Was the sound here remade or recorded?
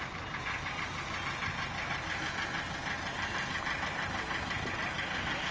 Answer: recorded